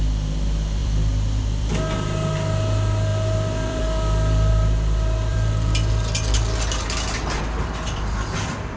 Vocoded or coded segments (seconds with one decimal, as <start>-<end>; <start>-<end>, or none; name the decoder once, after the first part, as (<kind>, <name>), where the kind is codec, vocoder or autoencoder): 0.8-1.7 (vocoder, BigVGAN v2); 3.1-4.5; 5.3-7.4